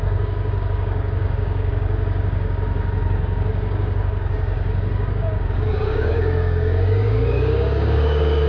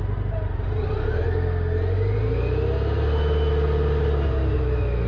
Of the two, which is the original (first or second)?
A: second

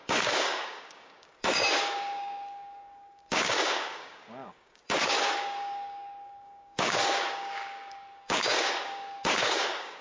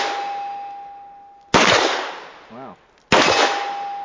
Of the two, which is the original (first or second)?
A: second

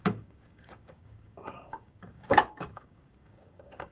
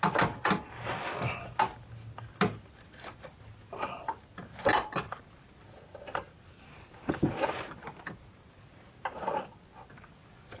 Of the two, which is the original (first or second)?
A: second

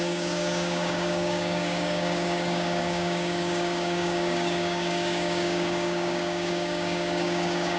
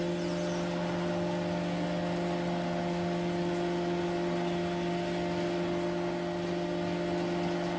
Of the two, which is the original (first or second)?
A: second